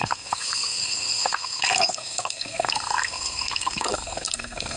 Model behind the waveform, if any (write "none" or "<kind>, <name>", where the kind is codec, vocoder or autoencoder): codec, SNAC